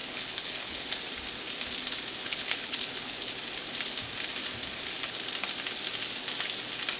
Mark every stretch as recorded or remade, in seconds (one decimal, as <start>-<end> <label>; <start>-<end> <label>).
0.0-0.8 remade; 0.8-2.2 recorded; 2.2-3.3 remade; 3.3-7.0 recorded